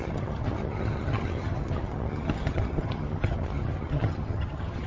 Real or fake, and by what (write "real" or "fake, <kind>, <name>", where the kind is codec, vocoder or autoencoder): fake, vocoder, HiFi-GAN